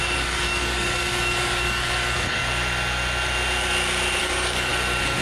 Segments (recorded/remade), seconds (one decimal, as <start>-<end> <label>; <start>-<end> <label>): 0.0-2.4 remade; 2.4-4.2 recorded; 4.2-4.7 remade; 4.7-5.2 recorded